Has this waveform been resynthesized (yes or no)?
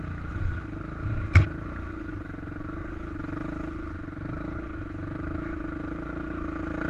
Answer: no